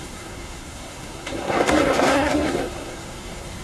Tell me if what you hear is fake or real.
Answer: fake